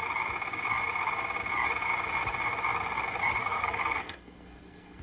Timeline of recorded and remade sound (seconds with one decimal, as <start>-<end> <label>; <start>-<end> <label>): 0.0-3.4 recorded; 3.4-5.0 remade